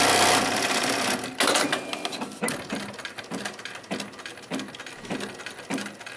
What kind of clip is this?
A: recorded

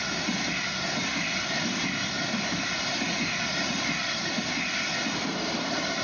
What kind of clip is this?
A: recorded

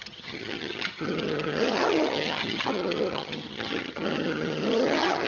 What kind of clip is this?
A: remade